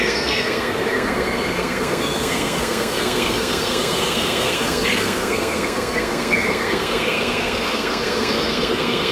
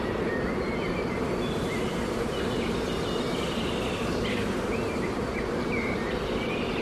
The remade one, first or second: first